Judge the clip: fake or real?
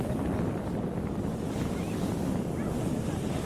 real